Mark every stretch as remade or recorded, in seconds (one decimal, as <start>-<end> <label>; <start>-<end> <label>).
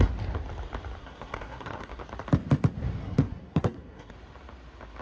0.0-1.0 recorded; 1.0-2.0 remade; 2.0-3.0 recorded; 3.0-4.1 remade; 4.1-5.0 recorded